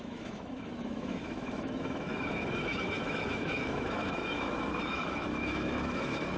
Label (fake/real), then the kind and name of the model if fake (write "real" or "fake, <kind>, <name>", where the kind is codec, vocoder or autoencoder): fake, autoencoder, DAC-VAE